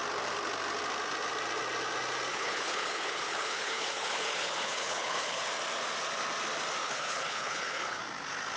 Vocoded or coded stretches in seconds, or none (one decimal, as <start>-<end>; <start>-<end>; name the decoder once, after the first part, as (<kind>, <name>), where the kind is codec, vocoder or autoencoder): 2.3-5.5 (codec, HILCodec); 6.8-8.0